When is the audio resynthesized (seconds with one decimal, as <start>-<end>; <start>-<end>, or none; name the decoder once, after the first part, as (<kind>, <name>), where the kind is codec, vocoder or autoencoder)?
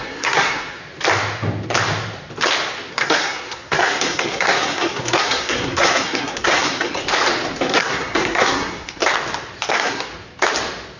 0.0-0.8 (codec, SNAC); 2.9-7.0; 7.6-9.0; 9.7-10.1